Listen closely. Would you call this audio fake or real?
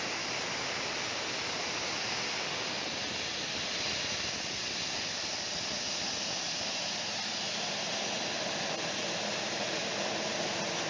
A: real